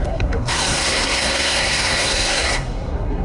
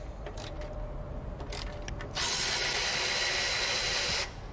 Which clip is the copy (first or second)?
first